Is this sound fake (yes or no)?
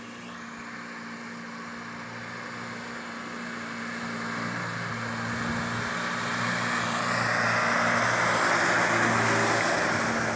no